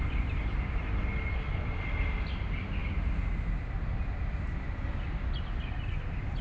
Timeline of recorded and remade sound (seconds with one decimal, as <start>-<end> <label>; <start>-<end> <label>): 0.0-6.4 recorded